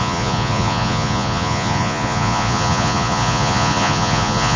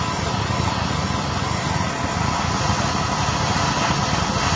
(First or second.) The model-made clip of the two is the first